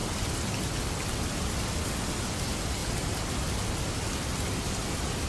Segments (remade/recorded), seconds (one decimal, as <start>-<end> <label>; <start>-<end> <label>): 0.0-5.3 recorded